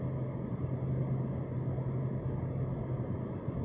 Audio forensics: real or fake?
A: real